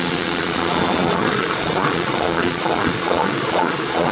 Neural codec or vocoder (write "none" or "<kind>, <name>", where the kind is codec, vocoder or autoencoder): vocoder, Vocos